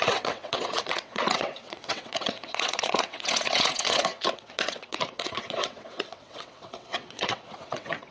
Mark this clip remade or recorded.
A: remade